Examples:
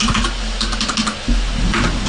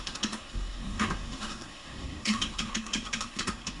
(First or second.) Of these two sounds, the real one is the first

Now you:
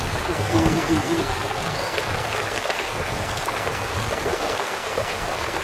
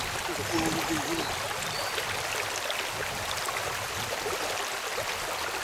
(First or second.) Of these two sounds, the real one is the second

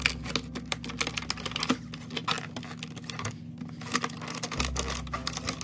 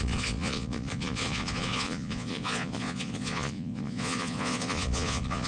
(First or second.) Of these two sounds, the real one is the first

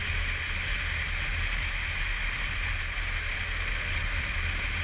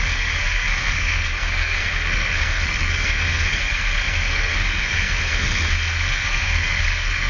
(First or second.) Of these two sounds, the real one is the first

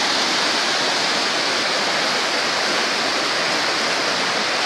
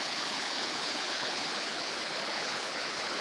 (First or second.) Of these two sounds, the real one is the first